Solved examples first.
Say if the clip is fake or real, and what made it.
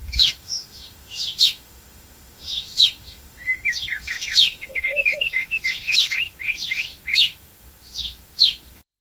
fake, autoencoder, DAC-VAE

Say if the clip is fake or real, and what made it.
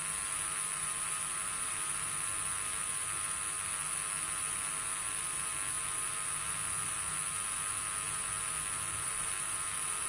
real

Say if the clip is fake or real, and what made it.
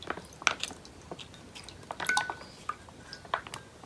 real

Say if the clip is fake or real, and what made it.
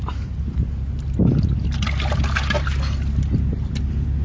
real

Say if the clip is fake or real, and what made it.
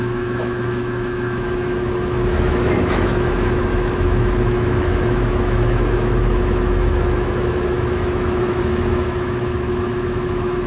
fake, autoencoder, DAC-VAE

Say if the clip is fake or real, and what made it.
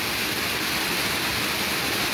real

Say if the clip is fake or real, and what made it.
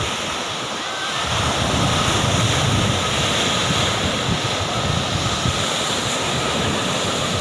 real